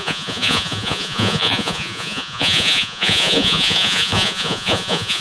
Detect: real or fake fake